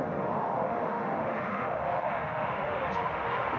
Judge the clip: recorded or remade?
remade